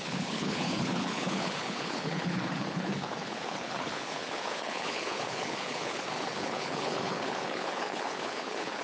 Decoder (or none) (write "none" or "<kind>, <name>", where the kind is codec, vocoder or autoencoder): codec, HILCodec